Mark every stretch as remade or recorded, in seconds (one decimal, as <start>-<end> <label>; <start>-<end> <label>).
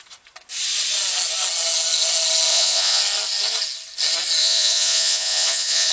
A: 0.0-2.5 recorded; 2.5-3.0 remade; 3.0-4.4 recorded; 4.4-5.9 remade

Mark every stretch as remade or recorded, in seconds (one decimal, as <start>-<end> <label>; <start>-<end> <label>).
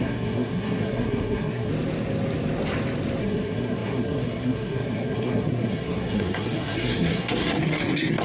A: 0.0-1.7 remade; 1.7-3.2 recorded; 3.2-8.2 remade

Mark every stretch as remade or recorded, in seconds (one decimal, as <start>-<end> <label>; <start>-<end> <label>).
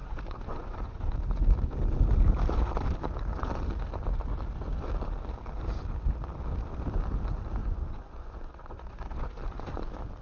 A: 0.0-1.2 remade; 1.2-7.6 recorded; 7.6-9.3 remade; 9.3-10.2 recorded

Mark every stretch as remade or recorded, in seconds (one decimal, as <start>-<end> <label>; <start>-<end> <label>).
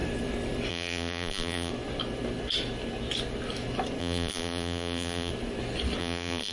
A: 0.0-0.7 recorded; 0.7-1.7 remade; 1.7-4.0 recorded; 4.0-5.3 remade; 5.3-6.0 recorded; 6.0-6.5 remade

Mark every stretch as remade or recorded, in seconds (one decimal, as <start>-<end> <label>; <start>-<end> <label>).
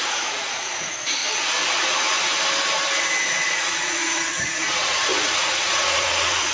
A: 0.0-1.2 remade; 1.2-3.5 recorded; 3.5-6.5 remade